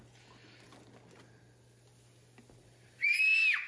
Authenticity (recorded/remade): recorded